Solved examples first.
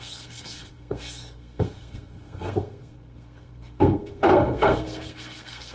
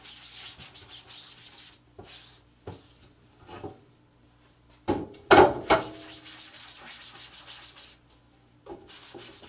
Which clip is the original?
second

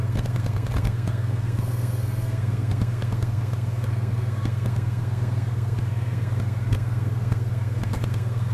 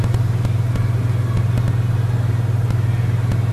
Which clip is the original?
second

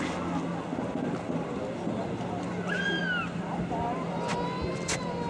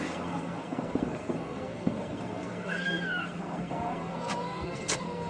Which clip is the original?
first